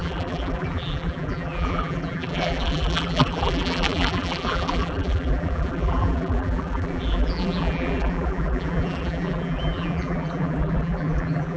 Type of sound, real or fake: fake